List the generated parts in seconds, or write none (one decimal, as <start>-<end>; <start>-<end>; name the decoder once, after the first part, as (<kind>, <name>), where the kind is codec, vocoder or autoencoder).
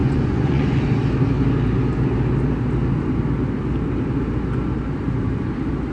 0.0-0.8 (vocoder, Vocos)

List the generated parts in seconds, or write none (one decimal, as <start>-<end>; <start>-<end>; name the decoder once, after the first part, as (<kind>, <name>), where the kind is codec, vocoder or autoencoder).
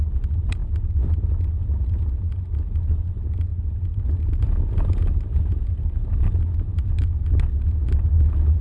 none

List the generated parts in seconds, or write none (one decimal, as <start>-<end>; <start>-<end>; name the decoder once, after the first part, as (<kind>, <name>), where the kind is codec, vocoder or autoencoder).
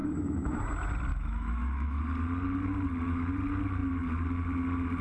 0.0-0.6 (autoencoder, DAC-VAE); 1.1-2.0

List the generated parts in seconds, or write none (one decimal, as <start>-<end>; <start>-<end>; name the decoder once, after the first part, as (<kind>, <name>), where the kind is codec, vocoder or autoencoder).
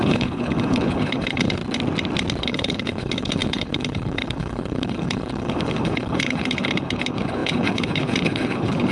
0.0-1.6 (codec, HILCodec); 2.4-8.9